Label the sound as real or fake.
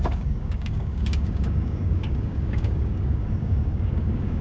fake